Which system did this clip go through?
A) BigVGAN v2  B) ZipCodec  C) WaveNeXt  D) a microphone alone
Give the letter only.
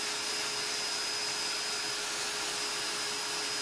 D